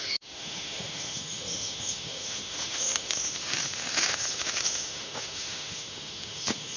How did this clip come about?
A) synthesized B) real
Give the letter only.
A